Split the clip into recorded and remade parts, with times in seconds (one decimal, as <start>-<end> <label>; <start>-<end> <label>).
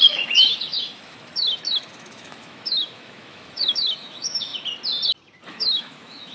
0.0-4.5 remade; 4.5-5.5 recorded; 5.5-6.3 remade